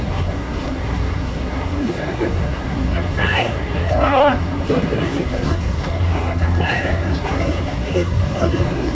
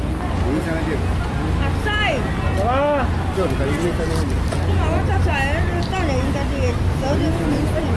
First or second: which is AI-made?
first